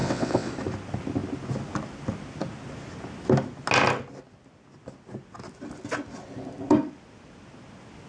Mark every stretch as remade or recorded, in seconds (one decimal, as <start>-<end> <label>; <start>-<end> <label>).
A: 0.0-0.5 remade; 0.5-8.1 recorded